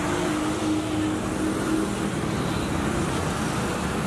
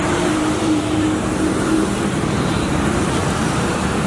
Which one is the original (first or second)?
first